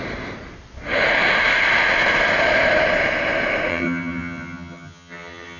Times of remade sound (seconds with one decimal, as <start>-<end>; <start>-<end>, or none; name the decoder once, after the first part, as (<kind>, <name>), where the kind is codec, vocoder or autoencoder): 3.7-5.6 (vocoder, HiFi-GAN)